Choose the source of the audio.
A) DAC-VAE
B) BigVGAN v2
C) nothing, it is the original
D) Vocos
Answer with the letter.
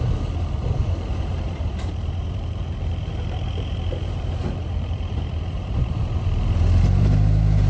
B